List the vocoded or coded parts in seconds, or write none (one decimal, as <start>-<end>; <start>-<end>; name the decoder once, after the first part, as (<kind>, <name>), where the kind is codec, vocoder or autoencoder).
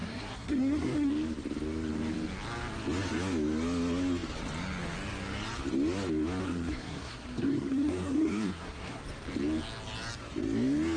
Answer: 0.0-1.1 (codec, SNAC); 6.4-9.0